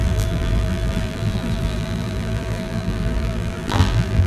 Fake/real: fake